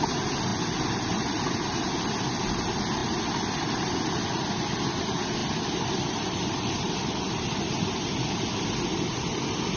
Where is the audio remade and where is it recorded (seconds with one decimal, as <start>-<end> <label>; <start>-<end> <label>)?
0.0-3.0 recorded; 3.0-4.5 remade; 4.5-5.4 recorded; 5.4-7.9 remade; 7.9-9.8 recorded